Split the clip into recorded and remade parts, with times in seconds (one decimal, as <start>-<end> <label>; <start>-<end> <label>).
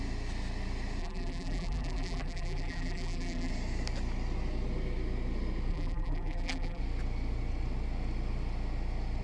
0.0-1.0 recorded; 1.0-3.5 remade; 3.5-5.7 recorded; 5.7-6.8 remade; 6.8-9.2 recorded